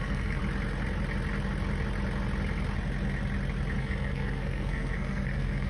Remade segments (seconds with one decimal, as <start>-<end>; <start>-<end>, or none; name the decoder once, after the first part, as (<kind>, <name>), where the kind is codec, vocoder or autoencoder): 0.0-0.4 (codec, SNAC); 3.8-5.7